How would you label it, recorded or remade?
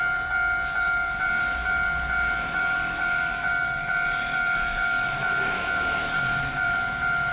remade